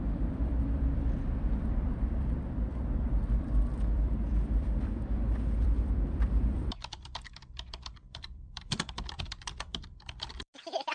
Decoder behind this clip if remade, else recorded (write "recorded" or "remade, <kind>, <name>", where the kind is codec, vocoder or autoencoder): remade, vocoder, BigVGAN v2